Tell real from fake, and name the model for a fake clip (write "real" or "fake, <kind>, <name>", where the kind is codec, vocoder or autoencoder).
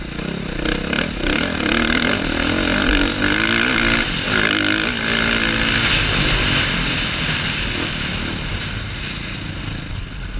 real